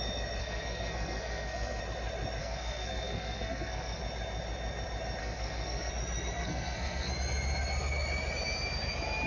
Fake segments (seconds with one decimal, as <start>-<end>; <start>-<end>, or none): 0.4-1.8; 2.4-4.0; 5.2-5.9; 6.4-7.1